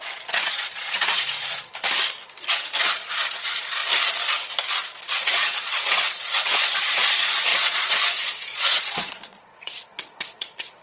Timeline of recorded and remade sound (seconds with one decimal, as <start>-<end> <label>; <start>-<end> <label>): 0.0-1.7 remade; 1.7-2.8 recorded; 2.8-3.8 remade; 3.8-5.0 recorded; 5.0-10.8 remade